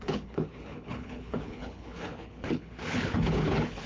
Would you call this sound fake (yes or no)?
yes